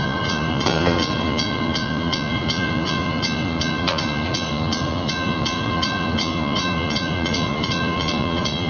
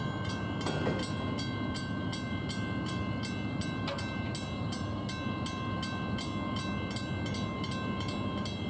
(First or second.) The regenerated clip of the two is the first